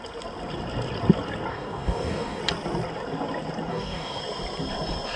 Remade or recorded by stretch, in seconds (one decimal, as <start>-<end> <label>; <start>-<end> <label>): 0.0-1.5 recorded; 1.5-2.4 remade; 2.4-3.7 recorded; 3.7-4.2 remade; 4.2-5.2 recorded